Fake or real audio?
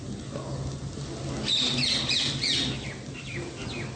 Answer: real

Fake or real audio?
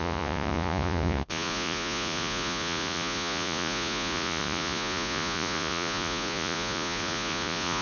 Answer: fake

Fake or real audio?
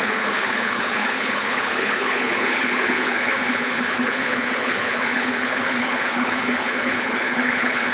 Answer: fake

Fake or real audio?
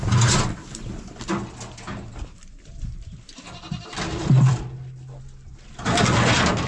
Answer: real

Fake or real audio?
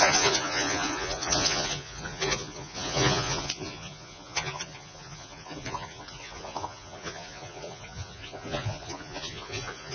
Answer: fake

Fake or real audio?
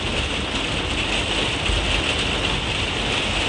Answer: real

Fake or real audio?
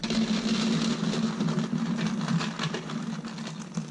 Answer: real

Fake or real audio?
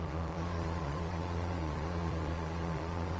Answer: fake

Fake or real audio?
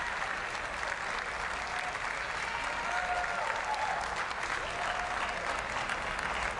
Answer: real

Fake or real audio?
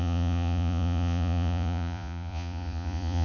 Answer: fake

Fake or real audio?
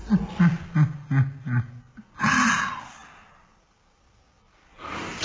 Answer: real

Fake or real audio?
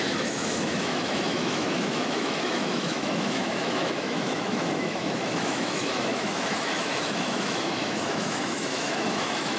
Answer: fake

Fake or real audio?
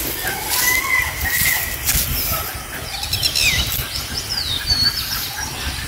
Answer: real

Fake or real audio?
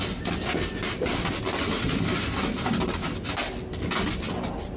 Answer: real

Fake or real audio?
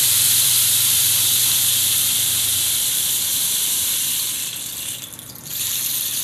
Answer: fake